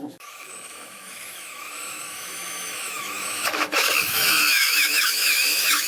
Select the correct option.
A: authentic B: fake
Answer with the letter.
B